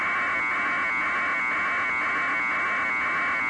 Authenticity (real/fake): real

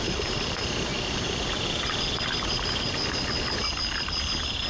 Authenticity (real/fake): real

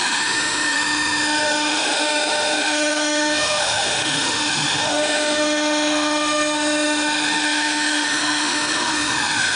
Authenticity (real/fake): fake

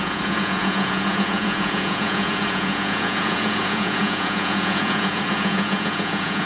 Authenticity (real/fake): fake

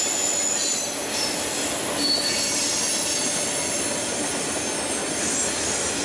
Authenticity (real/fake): real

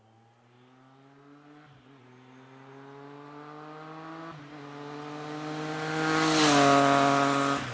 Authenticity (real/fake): real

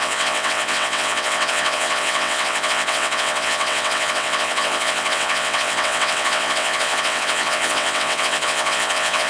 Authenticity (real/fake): fake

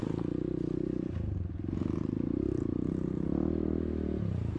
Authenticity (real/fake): real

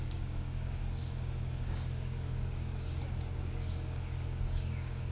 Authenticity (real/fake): fake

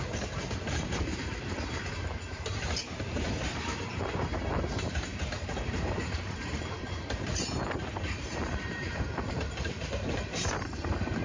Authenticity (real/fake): fake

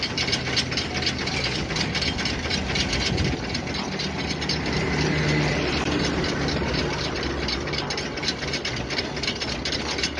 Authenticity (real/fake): real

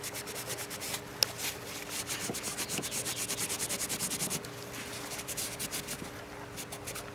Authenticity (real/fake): real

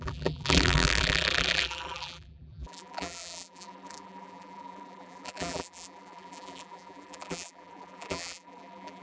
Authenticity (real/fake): fake